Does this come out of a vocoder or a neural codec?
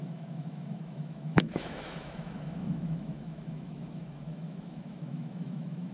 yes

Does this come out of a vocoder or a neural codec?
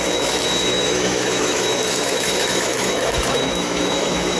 yes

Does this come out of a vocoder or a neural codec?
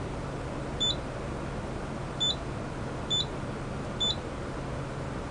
no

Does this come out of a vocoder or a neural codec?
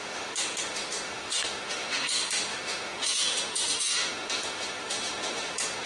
yes